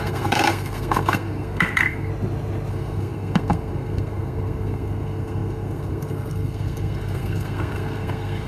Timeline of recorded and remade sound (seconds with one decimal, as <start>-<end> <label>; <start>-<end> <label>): 0.0-2.1 remade; 2.1-2.7 recorded; 2.7-8.5 remade